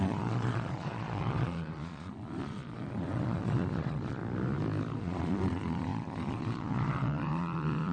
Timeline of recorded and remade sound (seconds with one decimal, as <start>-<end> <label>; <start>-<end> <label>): 0.0-4.2 remade; 4.2-5.0 recorded; 5.0-7.9 remade